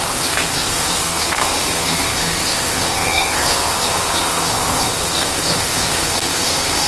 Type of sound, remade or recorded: remade